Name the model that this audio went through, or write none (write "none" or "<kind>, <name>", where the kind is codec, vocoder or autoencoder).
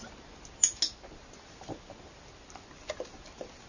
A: none